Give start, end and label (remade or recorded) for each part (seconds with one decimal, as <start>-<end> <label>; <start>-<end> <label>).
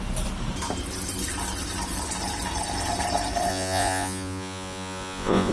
0.0-3.5 recorded; 3.5-5.5 remade